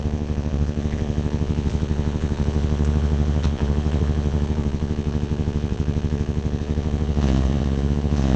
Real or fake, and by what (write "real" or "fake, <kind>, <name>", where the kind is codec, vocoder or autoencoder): fake, vocoder, Vocos